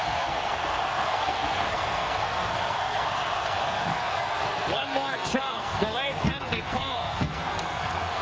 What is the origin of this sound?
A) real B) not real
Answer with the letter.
B